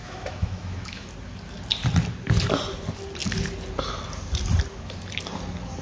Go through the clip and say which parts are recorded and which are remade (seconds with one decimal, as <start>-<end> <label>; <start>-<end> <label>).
0.0-1.1 remade; 1.1-5.8 recorded